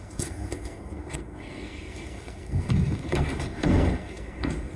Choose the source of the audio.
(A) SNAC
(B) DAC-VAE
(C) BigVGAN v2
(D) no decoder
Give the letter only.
A